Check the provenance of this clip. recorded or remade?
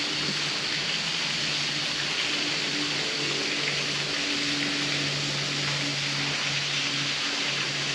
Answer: recorded